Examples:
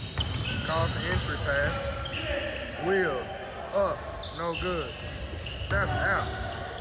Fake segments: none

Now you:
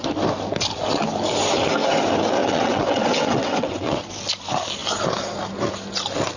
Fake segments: 2.4-4.0 (vocoder, WaveNeXt)

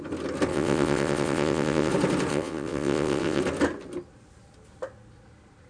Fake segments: 0.5-1.9 (vocoder, WaveNeXt); 2.3-3.4

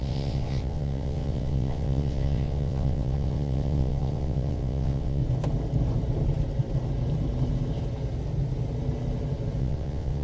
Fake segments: 0.0-5.2 (vocoder, WaveNeXt); 9.6-10.2

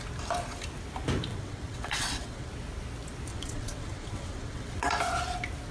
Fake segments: 1.3-2.5 (vocoder, WaveNeXt); 3.3-4.9

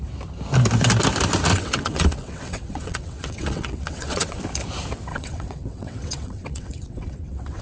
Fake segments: 1.5-4.4 (vocoder, WaveNeXt); 5.1-7.6

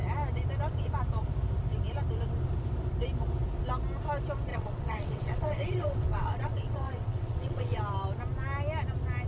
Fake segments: 4.5-7.8 (vocoder, WaveNeXt)

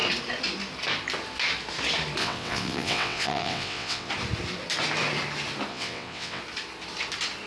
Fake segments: 2.2-4.1 (vocoder, WaveNeXt); 5.7-6.4